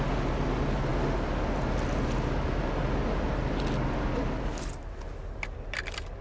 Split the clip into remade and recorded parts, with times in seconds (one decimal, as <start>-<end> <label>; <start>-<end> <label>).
0.0-6.2 recorded